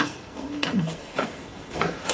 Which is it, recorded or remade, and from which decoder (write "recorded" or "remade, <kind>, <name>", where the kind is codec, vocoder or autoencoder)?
remade, codec, SNAC